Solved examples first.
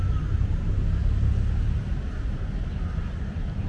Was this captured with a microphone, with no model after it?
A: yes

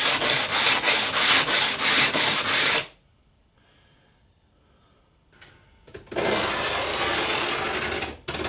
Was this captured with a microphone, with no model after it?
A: yes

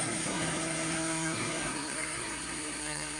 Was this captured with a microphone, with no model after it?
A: no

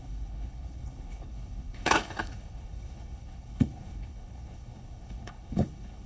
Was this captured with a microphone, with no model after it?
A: no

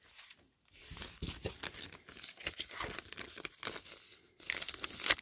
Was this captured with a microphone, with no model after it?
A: yes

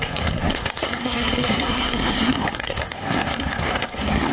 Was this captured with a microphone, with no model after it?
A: no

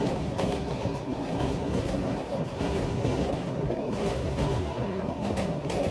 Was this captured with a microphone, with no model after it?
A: no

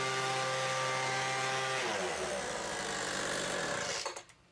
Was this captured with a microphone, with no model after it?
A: yes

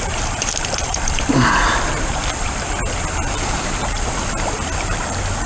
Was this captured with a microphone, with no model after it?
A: no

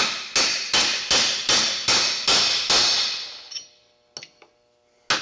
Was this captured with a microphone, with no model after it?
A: yes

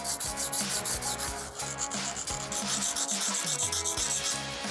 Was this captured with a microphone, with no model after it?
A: yes